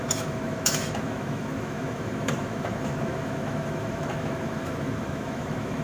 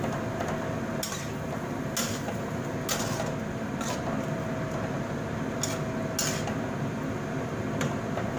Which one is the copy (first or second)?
first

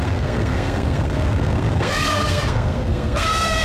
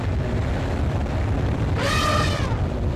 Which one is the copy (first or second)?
first